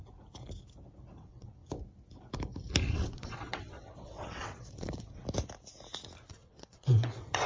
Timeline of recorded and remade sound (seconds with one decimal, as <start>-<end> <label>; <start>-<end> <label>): 0.0-1.1 recorded; 1.1-1.6 remade; 1.6-2.9 recorded; 2.9-5.2 remade; 5.2-6.3 recorded; 6.3-7.5 remade